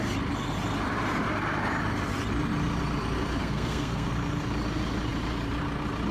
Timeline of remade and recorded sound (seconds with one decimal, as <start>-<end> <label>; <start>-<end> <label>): 0.0-3.4 recorded; 3.4-4.1 remade; 4.1-6.1 recorded